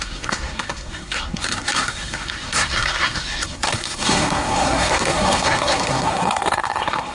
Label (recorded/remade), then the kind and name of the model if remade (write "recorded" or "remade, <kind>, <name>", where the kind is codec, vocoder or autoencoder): remade, codec, SNAC